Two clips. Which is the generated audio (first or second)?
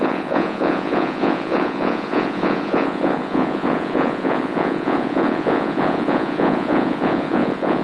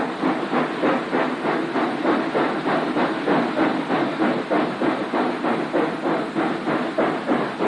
first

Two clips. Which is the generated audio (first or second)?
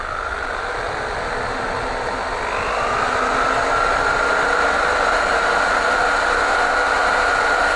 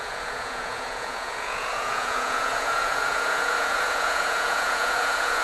second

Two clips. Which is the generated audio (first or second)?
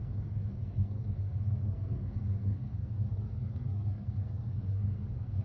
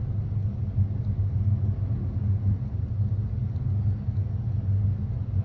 first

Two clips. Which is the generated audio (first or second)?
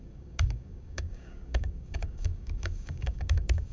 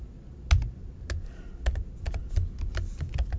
first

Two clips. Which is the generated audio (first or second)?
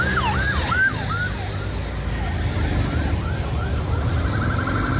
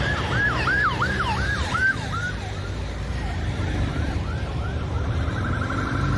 second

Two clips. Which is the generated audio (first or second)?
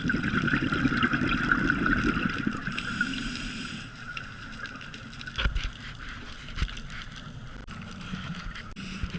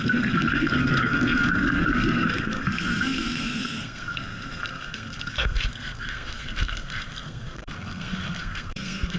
second